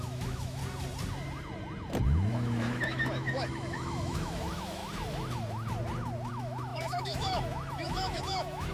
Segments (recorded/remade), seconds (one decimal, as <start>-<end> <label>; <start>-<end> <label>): 0.0-0.6 remade; 0.6-2.3 recorded; 2.3-4.8 remade; 4.8-6.3 recorded; 6.3-8.7 remade